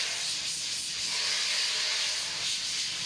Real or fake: real